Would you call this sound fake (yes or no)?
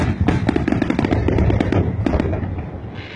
no